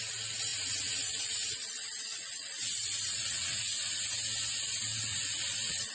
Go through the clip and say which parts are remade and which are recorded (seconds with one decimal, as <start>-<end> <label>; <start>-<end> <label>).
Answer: 0.0-0.5 recorded; 0.5-4.0 remade; 4.0-5.1 recorded; 5.1-5.9 remade